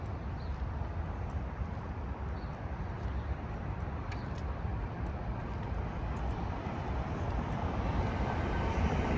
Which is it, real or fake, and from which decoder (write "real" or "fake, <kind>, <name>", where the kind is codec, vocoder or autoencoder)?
fake, vocoder, BigVGAN v2